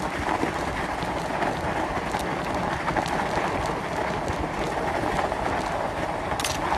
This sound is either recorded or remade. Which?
recorded